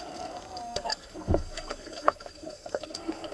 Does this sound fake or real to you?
fake